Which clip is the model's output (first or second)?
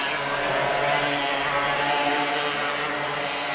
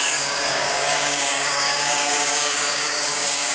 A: second